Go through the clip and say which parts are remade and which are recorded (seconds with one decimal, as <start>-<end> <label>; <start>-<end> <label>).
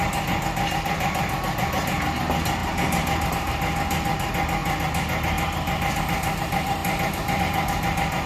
0.0-8.3 recorded